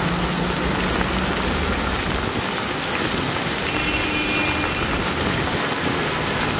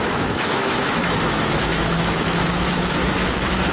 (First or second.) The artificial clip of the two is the second